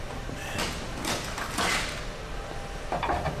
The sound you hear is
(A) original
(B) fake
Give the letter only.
A